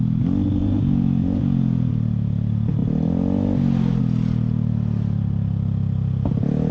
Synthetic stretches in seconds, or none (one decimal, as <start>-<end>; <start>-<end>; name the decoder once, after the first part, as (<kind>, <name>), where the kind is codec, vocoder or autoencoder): 0.6-1.9 (vocoder, Vocos)